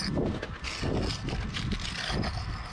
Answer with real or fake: real